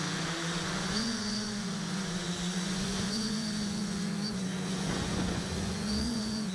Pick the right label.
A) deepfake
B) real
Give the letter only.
A